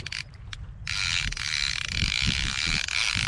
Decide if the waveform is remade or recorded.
recorded